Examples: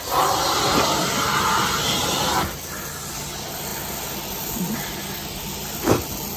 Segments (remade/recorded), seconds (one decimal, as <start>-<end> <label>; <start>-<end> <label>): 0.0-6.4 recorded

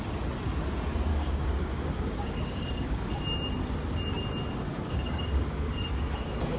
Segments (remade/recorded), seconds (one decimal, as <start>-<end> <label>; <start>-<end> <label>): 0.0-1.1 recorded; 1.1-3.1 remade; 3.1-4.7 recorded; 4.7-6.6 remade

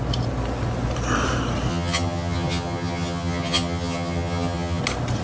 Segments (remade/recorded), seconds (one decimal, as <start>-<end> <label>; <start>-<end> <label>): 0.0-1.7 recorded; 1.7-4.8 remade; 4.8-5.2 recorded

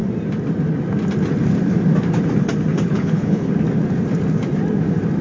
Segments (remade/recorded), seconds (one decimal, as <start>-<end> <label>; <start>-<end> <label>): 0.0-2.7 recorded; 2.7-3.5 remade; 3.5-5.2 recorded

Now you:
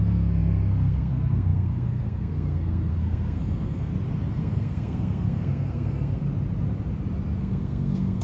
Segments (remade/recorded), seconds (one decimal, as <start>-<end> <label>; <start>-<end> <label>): 0.0-3.9 remade; 3.9-4.4 recorded; 4.4-6.2 remade; 6.2-7.4 recorded; 7.4-8.2 remade

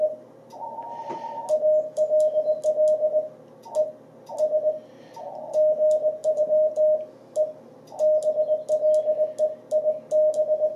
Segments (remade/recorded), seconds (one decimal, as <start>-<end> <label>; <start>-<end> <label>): 0.0-6.2 recorded; 6.2-6.7 remade; 6.7-10.8 recorded

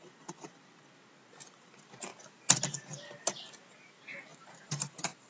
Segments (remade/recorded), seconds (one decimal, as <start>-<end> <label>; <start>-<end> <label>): 0.0-4.3 recorded; 4.3-5.3 remade